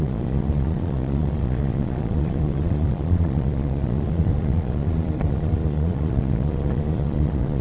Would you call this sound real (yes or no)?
no